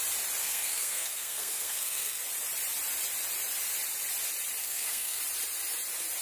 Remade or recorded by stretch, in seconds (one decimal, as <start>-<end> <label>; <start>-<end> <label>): 0.0-0.4 recorded; 0.4-2.2 remade; 2.2-4.6 recorded; 4.6-5.2 remade; 5.2-6.2 recorded